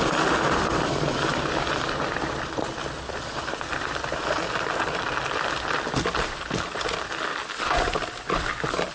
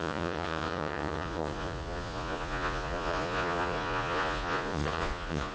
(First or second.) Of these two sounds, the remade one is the second